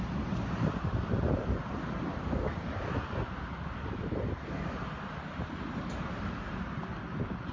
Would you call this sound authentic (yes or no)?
yes